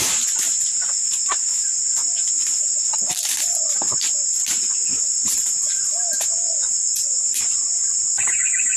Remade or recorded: remade